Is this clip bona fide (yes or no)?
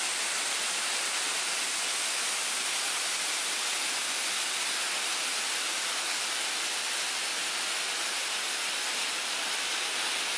yes